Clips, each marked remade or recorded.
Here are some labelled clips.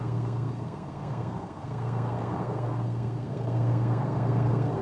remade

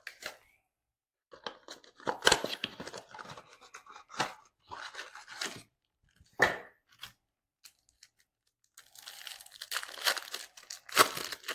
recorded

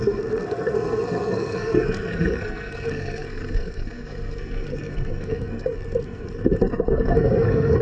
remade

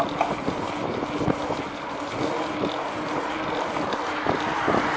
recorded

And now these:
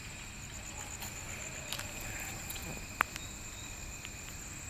recorded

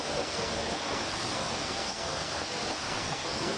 remade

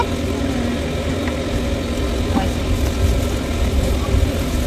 recorded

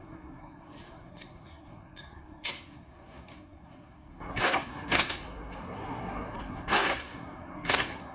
remade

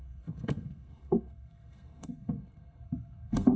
remade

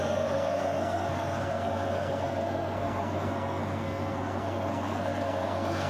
remade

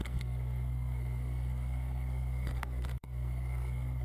remade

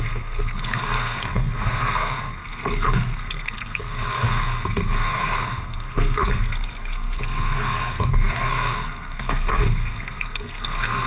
remade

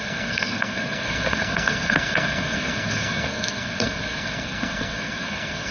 remade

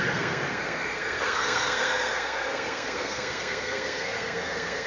remade